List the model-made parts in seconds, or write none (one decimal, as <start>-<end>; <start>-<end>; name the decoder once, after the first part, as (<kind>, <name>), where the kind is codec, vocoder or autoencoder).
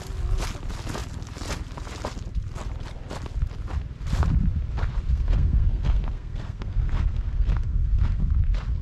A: 5.1-8.3 (codec, SNAC)